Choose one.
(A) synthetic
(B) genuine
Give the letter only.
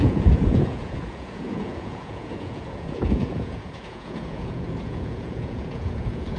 A